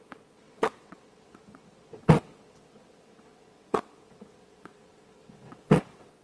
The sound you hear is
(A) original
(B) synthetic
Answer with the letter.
B